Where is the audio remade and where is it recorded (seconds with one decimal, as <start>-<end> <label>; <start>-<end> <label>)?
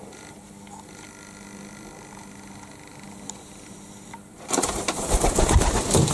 0.0-6.1 recorded